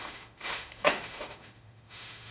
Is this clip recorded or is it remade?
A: remade